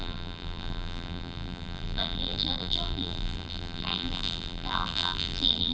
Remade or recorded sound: remade